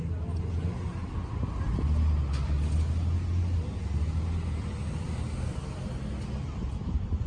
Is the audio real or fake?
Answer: real